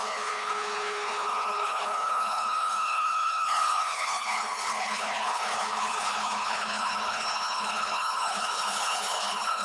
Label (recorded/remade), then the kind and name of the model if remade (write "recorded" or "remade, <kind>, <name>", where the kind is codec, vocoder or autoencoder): remade, codec, HILCodec